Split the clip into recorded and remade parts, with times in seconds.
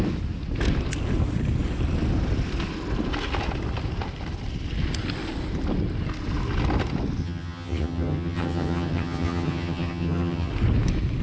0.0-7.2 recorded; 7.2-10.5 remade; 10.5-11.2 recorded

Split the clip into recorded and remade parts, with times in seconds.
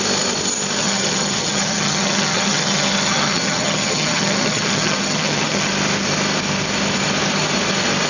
0.0-0.8 recorded; 0.8-5.7 remade; 5.7-8.1 recorded